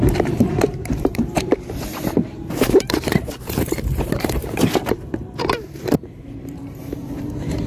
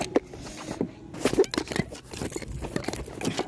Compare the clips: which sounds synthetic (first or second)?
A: first